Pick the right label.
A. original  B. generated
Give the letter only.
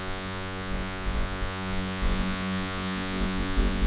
B